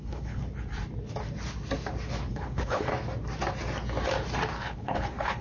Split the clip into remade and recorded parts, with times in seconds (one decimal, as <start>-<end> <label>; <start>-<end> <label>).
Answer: 0.0-0.4 remade; 0.4-2.3 recorded; 2.3-2.9 remade; 2.9-4.5 recorded; 4.5-5.4 remade